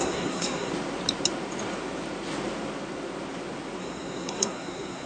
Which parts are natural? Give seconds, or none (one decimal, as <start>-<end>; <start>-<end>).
0.7-3.8